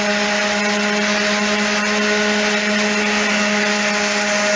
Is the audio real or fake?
real